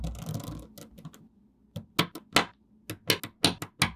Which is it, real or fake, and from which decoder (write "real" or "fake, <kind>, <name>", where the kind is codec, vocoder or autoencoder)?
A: real